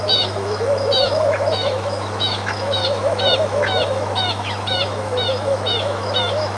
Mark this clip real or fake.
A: fake